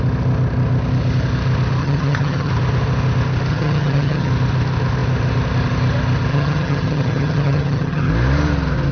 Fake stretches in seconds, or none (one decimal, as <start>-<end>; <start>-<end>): 1.8-2.5; 3.5-4.3; 6.3-8.1